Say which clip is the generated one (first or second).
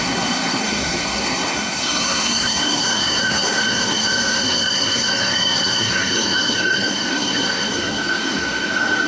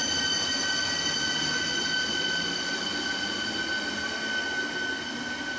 first